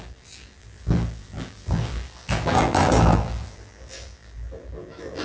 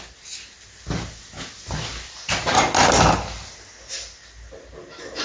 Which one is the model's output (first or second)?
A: first